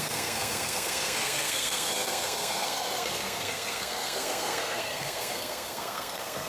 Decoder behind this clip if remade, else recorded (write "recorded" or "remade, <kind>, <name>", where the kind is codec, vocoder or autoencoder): remade, codec, SNAC